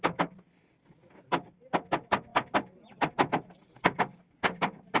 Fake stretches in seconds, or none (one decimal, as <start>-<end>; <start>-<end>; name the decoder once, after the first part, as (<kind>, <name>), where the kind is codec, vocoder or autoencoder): none